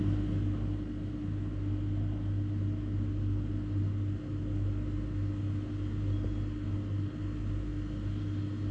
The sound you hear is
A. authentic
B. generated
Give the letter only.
A